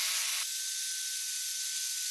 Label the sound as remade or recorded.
recorded